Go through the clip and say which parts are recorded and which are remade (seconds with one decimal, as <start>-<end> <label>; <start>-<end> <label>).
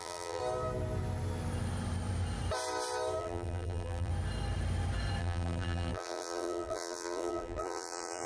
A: 0.0-0.4 remade; 0.4-3.2 recorded; 3.2-4.1 remade; 4.1-5.2 recorded; 5.2-8.3 remade